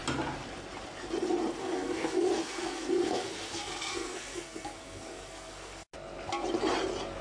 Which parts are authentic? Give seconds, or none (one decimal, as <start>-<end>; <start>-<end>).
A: 0.0-1.6; 5.9-7.2